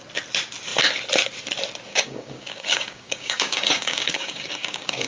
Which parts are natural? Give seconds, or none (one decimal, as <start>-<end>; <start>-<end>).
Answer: 0.0-1.9